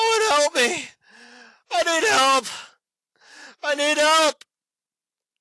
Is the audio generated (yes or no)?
no